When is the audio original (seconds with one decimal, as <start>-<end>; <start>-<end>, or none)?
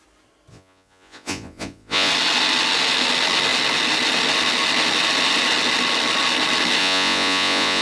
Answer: 0.0-0.5; 2.1-6.8